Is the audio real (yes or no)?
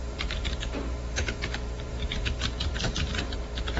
no